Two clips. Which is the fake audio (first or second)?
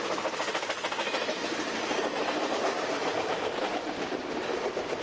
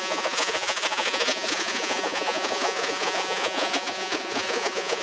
second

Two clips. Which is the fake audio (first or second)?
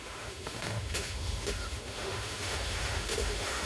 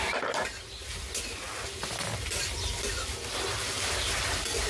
first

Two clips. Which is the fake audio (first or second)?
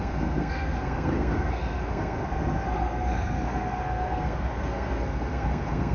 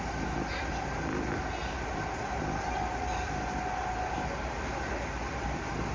first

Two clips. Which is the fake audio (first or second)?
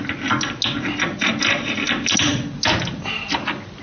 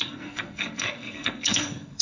second